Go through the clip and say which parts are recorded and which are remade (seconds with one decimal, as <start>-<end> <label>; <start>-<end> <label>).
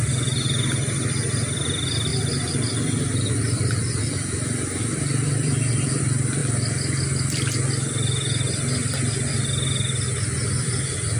0.0-2.1 recorded; 2.1-6.0 remade; 6.0-11.2 recorded